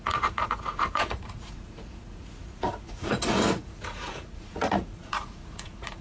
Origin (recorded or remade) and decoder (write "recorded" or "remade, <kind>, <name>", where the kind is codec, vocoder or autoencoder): remade, vocoder, Vocos